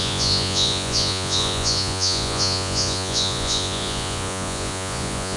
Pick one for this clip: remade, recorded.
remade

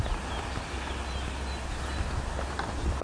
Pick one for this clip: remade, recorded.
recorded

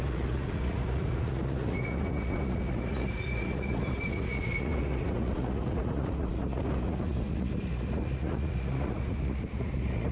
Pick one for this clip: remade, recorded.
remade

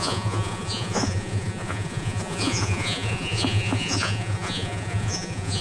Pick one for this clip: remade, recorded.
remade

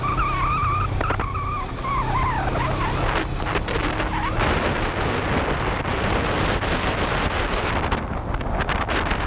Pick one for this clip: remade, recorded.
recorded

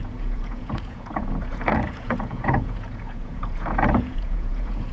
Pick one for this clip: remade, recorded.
remade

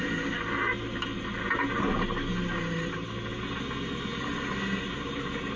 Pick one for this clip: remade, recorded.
recorded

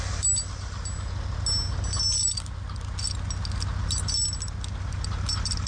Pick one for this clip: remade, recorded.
recorded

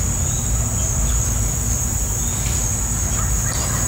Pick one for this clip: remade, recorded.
recorded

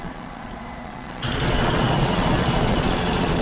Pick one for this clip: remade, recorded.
remade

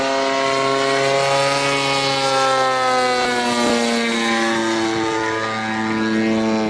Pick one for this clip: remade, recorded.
recorded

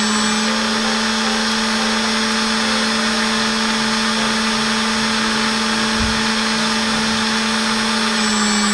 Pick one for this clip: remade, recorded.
recorded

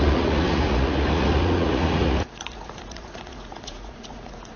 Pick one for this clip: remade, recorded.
remade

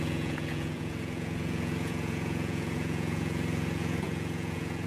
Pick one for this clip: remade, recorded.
remade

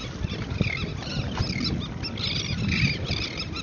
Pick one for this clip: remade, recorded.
recorded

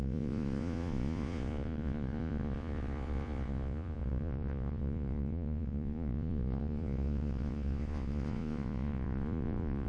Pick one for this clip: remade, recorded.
remade